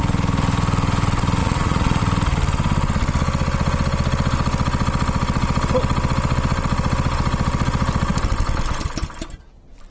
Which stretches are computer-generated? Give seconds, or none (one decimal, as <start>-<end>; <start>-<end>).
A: 1.4-2.0